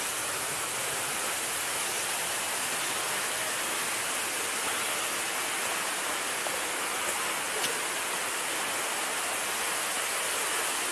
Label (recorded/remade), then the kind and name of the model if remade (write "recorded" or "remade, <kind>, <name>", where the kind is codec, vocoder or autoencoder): recorded